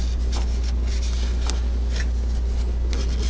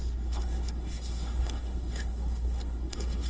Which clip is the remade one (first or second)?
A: second